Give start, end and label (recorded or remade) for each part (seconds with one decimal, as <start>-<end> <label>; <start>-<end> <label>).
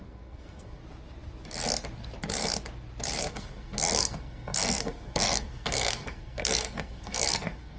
0.0-0.8 remade; 0.8-3.2 recorded; 3.2-7.8 remade